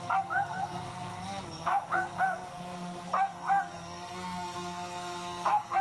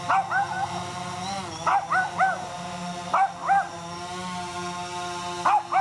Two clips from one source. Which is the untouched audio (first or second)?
second